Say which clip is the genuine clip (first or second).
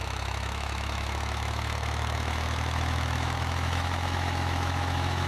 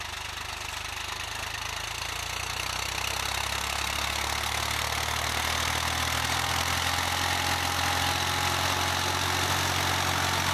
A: second